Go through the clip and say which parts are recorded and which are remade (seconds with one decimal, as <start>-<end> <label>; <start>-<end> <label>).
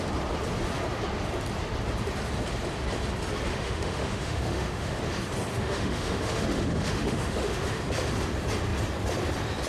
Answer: 0.0-3.5 recorded; 3.5-5.0 remade; 5.0-5.5 recorded; 5.5-7.8 remade; 7.8-9.7 recorded